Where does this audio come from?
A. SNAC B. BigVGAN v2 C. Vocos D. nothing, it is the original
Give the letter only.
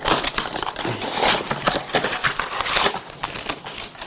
D